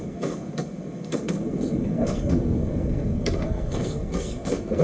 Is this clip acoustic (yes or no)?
no